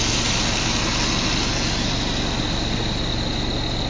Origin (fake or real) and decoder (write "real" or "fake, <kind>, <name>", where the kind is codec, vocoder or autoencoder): real